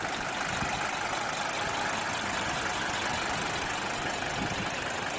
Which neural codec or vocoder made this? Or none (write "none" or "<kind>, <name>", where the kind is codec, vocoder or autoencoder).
none